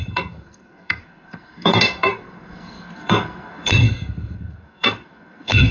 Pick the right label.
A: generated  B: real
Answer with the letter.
A